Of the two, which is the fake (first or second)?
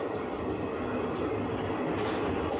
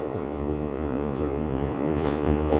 second